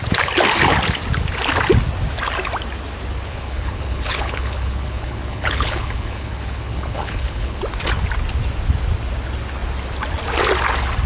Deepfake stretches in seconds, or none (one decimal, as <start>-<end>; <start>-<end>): 3.3-7.6